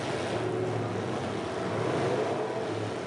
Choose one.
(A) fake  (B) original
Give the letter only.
B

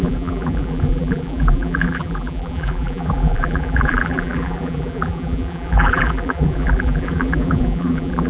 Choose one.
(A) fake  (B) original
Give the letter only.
A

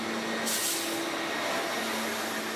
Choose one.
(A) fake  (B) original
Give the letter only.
B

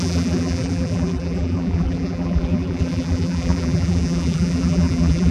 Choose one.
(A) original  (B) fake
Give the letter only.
B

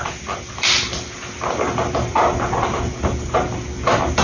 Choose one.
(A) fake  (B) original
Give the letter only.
B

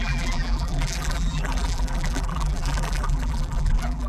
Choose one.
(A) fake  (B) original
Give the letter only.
A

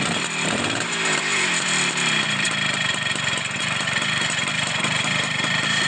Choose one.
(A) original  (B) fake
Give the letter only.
B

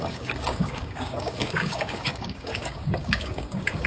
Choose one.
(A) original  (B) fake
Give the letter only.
B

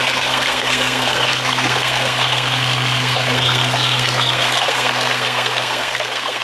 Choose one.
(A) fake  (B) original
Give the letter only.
A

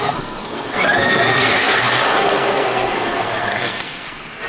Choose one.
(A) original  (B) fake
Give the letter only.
B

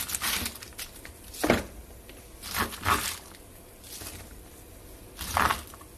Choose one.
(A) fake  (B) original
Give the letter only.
B